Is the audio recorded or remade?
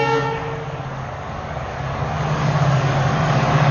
remade